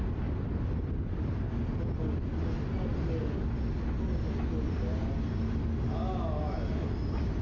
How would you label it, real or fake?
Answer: real